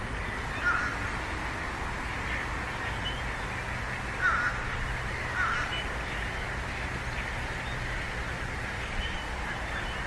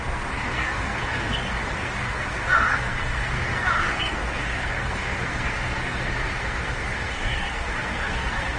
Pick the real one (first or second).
first